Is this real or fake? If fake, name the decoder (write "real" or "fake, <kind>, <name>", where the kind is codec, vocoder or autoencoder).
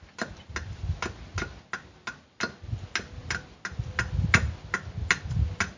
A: real